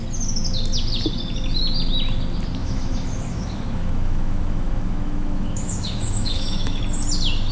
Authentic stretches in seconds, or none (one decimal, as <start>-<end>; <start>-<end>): 0.0-2.6; 6.8-7.5